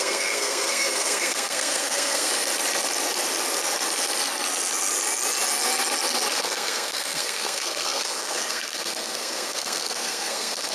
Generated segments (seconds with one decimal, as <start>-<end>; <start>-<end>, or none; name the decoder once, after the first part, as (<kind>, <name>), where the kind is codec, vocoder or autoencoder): 0.0-2.3 (codec, SNAC); 6.3-10.7